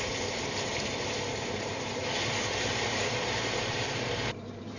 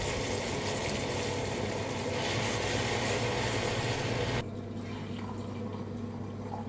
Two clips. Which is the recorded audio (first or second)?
second